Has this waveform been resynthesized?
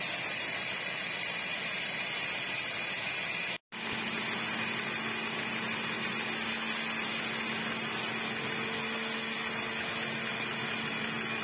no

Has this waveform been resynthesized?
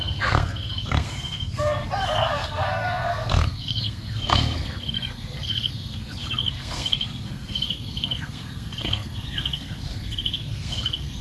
yes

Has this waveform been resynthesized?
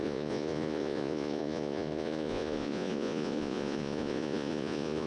yes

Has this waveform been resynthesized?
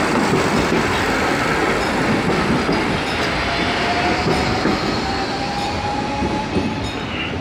no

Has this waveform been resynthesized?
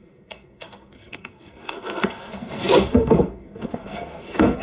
yes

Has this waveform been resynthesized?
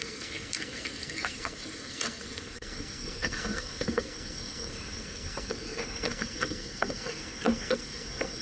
yes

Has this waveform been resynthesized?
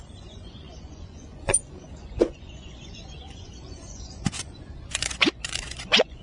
yes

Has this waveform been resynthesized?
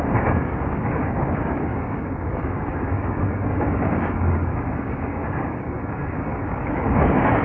yes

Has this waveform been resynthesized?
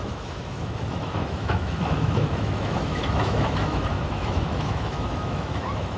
yes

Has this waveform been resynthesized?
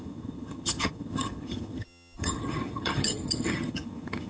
yes